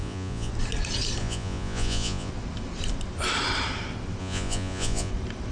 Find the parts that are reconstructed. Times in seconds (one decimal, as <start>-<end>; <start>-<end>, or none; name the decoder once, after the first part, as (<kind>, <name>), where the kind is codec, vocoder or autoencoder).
0.0-0.5 (vocoder, Vocos); 1.2-2.3; 4.2-5.1